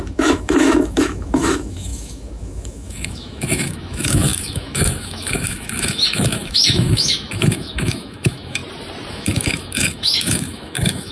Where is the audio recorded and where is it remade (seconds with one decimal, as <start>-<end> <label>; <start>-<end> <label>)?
0.0-8.6 remade; 8.6-9.1 recorded; 9.1-11.1 remade